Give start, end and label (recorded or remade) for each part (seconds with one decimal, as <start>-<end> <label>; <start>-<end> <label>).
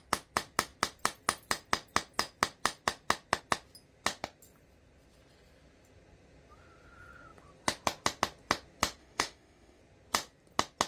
0.0-9.0 recorded; 9.0-9.8 remade; 9.8-10.9 recorded